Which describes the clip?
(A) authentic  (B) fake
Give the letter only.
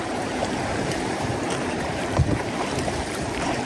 B